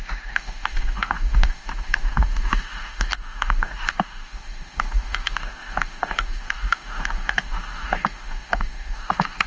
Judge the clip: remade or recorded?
remade